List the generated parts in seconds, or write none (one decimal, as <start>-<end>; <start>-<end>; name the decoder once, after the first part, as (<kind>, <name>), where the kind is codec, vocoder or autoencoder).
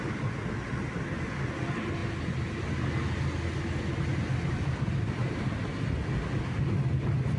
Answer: none